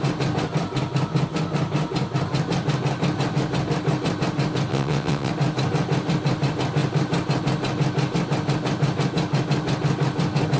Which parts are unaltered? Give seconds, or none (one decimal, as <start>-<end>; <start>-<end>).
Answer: 0.0-4.7; 5.3-10.6